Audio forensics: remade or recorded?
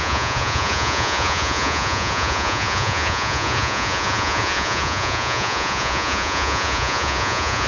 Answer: remade